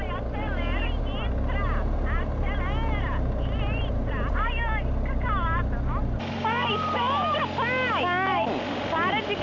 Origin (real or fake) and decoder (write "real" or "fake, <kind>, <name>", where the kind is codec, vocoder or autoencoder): real